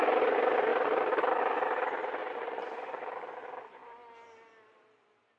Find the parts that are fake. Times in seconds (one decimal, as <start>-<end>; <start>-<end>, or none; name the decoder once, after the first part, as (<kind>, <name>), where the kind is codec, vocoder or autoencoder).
2.2-3.0 (vocoder, Vocos)